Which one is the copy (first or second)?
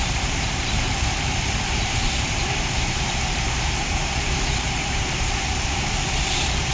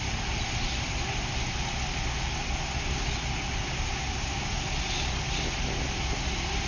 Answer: first